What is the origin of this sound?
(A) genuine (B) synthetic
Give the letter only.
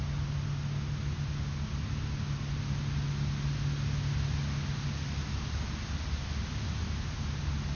A